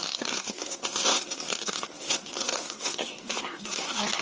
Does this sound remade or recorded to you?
remade